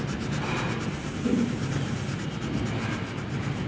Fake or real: real